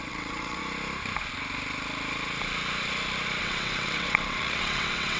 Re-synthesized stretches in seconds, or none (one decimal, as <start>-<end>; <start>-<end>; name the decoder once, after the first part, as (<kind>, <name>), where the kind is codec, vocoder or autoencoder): 0.0-0.6 (vocoder, WaveNeXt); 3.4-5.2

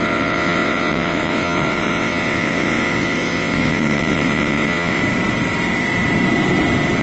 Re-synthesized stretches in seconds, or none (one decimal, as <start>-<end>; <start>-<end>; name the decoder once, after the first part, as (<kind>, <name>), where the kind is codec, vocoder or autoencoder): 0.0-5.0 (vocoder, WaveNeXt)

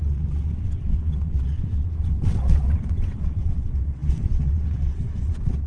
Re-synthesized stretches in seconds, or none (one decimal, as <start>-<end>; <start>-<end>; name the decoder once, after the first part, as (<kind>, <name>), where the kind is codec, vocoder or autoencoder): 0.0-5.7 (vocoder, WaveNeXt)

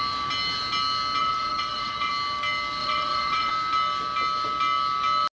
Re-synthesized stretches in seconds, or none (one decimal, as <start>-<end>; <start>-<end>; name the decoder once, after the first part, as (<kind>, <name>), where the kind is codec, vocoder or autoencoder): 1.2-2.1 (vocoder, WaveNeXt); 2.8-3.5

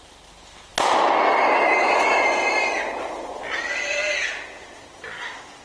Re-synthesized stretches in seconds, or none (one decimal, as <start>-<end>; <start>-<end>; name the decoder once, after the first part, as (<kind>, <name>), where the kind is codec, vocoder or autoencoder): none

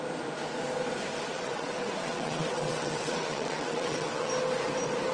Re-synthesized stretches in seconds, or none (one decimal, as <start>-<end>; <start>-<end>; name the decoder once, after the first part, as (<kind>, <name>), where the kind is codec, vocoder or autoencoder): 1.3-4.3 (vocoder, WaveNeXt)

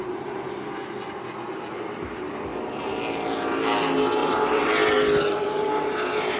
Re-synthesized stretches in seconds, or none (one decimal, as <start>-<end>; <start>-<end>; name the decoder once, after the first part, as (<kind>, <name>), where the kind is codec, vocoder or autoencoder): 4.2-4.7 (vocoder, WaveNeXt)